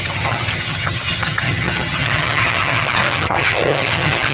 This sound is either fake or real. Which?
fake